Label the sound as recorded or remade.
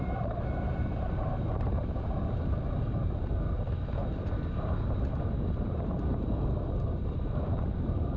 remade